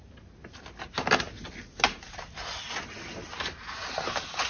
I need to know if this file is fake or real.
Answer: real